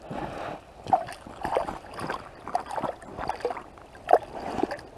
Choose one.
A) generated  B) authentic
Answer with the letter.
B